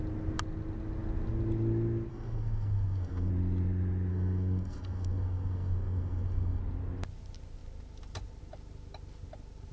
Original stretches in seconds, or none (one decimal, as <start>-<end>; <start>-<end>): 0.0-2.1; 3.3-4.1; 6.6-9.7